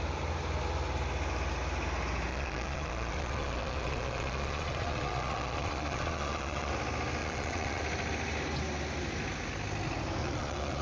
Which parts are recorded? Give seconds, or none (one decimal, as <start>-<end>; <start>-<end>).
0.0-2.3; 6.7-7.2; 7.8-10.2